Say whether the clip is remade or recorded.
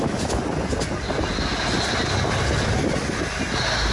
recorded